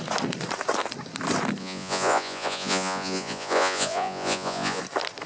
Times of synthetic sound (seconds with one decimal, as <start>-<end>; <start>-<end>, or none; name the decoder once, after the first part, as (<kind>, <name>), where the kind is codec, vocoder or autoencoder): 1.6-4.8 (vocoder, Vocos)